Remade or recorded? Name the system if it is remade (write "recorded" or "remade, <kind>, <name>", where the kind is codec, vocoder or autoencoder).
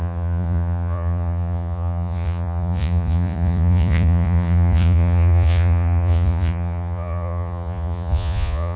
remade, vocoder, Vocos